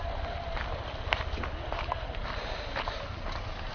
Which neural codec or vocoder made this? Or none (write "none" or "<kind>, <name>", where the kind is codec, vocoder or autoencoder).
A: none